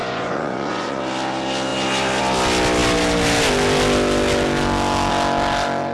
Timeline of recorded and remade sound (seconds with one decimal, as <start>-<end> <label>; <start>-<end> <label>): 0.0-1.0 remade; 1.0-5.9 recorded